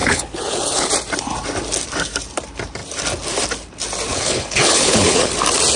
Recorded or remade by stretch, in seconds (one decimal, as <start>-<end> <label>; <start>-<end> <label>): 0.0-0.9 remade; 0.9-4.1 recorded; 4.1-5.3 remade; 5.3-5.8 recorded